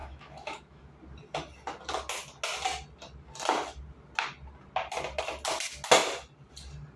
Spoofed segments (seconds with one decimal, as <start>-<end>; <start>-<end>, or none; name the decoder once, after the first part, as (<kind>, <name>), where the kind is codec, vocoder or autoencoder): 0.0-0.8 (autoencoder, DAC-VAE)